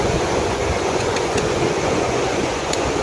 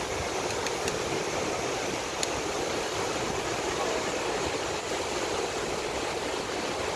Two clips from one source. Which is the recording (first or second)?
second